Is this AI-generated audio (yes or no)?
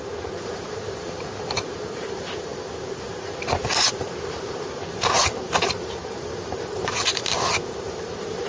yes